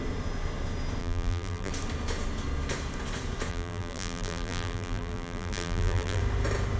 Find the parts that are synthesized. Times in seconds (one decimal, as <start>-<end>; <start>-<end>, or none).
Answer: 1.0-1.7; 3.5-6.2

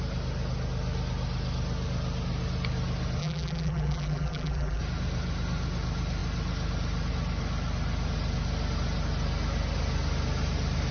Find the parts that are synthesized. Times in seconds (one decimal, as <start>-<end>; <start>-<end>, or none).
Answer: 3.2-4.8